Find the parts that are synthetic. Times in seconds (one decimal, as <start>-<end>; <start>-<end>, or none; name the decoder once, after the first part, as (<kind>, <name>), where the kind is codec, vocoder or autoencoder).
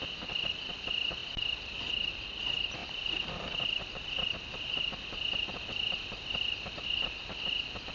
2.8-5.2 (vocoder, BigVGAN v2)